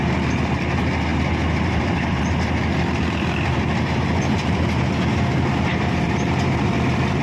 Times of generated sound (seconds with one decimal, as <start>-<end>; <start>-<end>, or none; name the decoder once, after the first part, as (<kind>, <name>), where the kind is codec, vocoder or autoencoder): 1.1-2.2 (vocoder, BigVGAN v2); 5.7-7.2